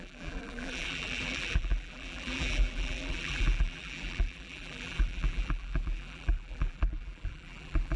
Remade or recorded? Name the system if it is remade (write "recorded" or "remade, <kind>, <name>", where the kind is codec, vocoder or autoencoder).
remade, vocoder, BigVGAN v2